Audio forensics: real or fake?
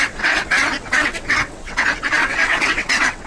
fake